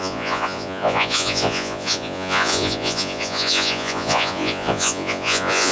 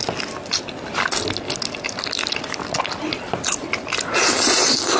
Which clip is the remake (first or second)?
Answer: first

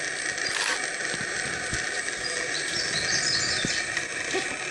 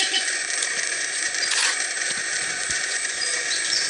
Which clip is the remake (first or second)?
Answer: second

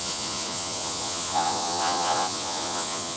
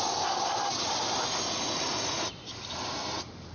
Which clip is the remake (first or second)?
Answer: first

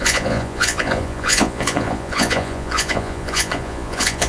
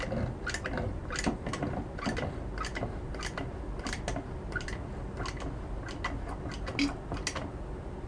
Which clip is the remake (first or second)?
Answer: first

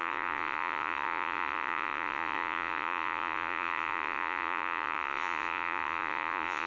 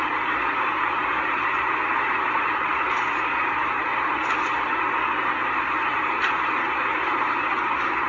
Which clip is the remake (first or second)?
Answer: first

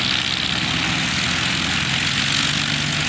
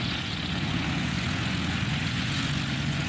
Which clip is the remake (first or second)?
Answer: second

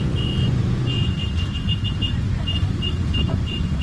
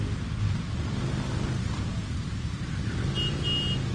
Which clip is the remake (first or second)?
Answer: first